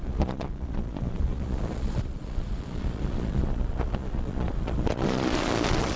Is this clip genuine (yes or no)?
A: no